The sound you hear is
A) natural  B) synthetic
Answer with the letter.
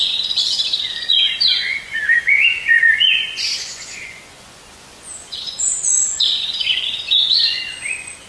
B